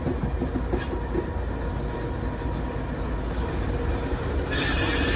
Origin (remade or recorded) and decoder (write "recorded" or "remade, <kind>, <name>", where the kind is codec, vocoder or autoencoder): recorded